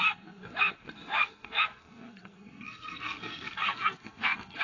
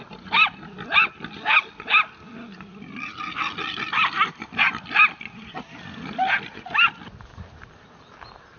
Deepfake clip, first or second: first